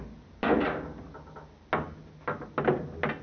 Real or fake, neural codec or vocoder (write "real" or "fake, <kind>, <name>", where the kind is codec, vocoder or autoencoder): real